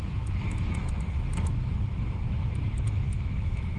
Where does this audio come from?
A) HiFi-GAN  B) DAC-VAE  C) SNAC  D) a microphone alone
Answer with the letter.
B